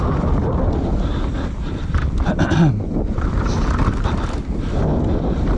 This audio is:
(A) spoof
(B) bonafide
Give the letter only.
B